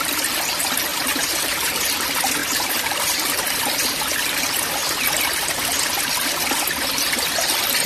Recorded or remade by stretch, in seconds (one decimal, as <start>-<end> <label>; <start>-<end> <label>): 0.0-0.9 recorded; 0.9-1.7 remade; 1.7-2.4 recorded; 2.4-4.0 remade; 4.0-7.9 recorded